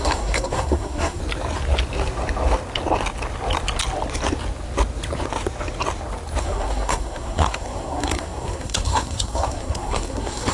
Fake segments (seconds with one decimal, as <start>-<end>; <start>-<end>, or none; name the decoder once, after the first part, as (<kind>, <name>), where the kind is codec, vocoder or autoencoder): 0.0-1.2 (codec, SNAC); 6.4-10.5